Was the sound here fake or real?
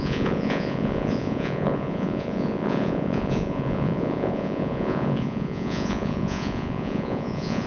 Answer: fake